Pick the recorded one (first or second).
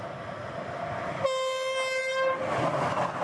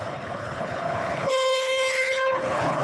first